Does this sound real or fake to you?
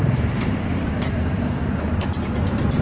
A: fake